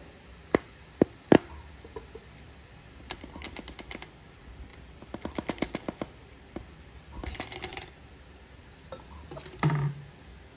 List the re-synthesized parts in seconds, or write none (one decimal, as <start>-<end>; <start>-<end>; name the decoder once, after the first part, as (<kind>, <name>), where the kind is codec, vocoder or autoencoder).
none